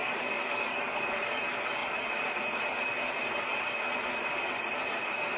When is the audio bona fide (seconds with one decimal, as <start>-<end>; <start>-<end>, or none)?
1.4-5.4